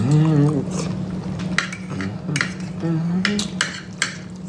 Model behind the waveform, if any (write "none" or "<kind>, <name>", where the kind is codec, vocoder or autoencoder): none